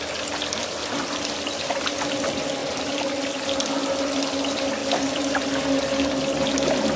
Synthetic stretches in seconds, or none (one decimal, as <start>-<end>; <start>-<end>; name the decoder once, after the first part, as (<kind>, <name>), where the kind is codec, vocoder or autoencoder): none